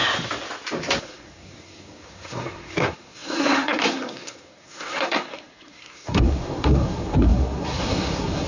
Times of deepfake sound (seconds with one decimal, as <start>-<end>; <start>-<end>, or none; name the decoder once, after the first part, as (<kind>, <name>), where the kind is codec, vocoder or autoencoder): 1.0-8.5 (codec, SNAC)